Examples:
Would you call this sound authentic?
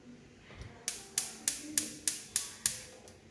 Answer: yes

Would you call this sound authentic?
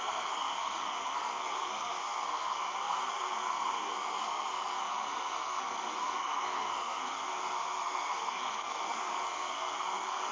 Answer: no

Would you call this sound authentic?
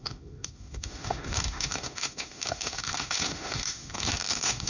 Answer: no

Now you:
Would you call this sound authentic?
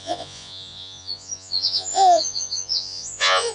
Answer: no